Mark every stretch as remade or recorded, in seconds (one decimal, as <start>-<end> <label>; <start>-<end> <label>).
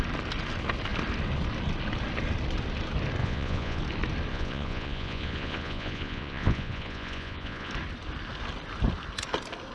0.0-3.2 recorded; 3.2-3.8 remade; 3.8-4.3 recorded; 4.3-7.7 remade; 7.7-9.7 recorded